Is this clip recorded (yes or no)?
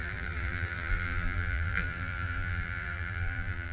no